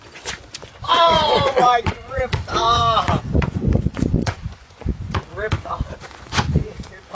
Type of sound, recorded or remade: remade